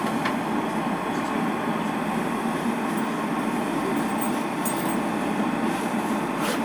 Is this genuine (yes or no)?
no